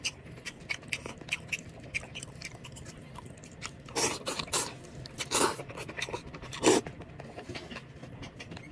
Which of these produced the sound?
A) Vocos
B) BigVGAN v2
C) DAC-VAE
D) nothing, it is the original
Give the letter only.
D